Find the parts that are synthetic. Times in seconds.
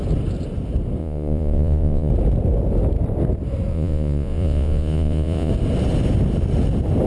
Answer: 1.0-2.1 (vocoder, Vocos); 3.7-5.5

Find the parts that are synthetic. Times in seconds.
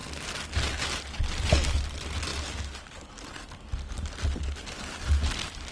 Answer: none